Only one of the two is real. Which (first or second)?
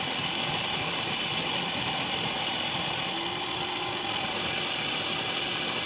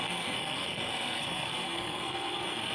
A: first